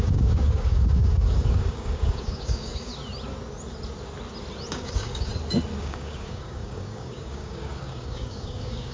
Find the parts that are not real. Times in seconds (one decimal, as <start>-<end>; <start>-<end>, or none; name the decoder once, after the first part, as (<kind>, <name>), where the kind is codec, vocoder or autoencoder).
0.0-2.9 (codec, DAC); 4.7-5.3; 5.8-8.9